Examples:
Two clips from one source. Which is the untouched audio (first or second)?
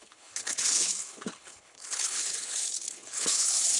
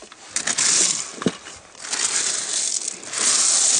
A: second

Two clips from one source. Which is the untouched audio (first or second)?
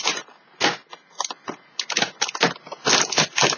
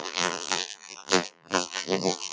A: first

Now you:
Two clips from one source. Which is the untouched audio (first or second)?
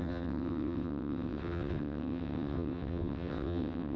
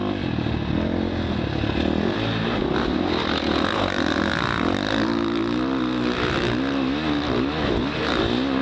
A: second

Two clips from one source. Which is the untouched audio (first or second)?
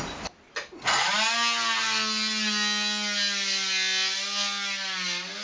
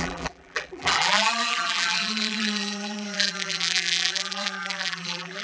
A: first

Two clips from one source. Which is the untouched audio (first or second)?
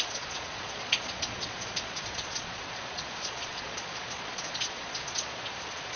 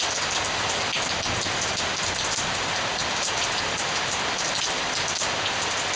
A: second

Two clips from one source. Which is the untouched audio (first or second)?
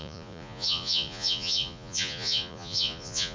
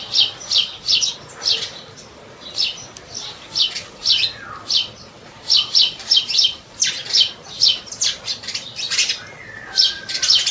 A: second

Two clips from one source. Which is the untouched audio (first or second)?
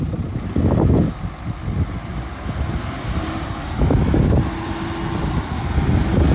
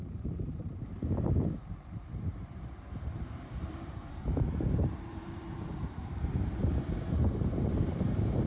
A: first